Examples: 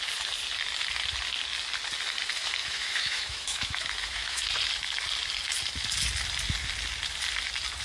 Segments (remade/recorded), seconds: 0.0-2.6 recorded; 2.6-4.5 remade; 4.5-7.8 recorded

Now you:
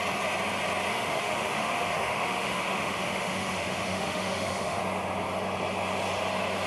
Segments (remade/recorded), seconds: 0.0-0.9 recorded; 0.9-4.8 remade; 4.8-6.7 recorded

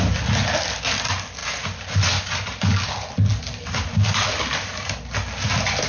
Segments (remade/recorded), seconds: 0.0-5.9 recorded

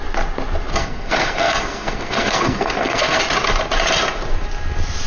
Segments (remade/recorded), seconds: 0.0-0.7 recorded; 0.7-3.2 remade; 3.2-5.1 recorded

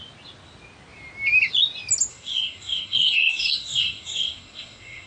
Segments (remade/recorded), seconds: 0.0-2.1 recorded; 2.1-5.1 remade

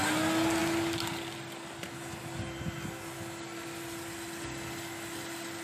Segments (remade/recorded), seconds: 0.0-5.6 recorded

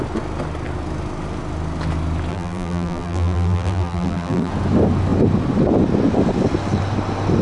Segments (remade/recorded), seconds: 0.0-2.3 recorded; 2.3-4.5 remade; 4.5-7.4 recorded

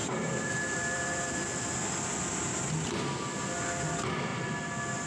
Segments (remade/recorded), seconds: 0.0-1.4 remade; 1.4-5.1 recorded